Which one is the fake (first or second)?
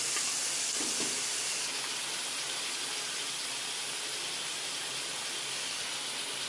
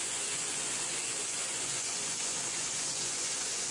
second